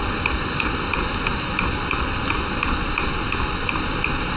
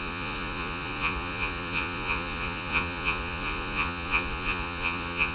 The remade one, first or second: second